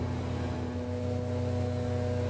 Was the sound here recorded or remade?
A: recorded